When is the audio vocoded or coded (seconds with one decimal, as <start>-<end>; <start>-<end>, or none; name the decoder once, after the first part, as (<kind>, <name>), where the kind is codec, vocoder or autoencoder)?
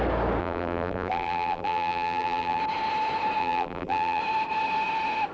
0.4-2.6 (vocoder, BigVGAN v2); 3.4-4.2